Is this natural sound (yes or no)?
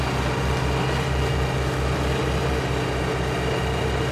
yes